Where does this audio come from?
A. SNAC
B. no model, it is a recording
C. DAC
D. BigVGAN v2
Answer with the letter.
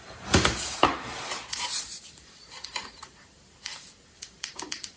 D